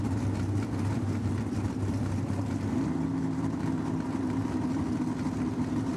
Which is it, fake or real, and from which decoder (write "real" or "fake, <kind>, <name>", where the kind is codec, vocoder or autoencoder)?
real